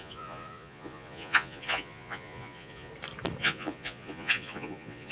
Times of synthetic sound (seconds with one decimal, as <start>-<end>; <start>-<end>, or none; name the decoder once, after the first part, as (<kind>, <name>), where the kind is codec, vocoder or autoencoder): 0.0-2.9 (vocoder, Vocos); 3.4-5.1